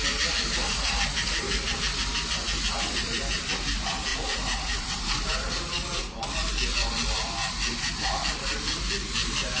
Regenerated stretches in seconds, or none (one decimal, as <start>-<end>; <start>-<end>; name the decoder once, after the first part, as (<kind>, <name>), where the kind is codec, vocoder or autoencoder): 4.1-6.1 (vocoder, BigVGAN v2); 7.4-7.9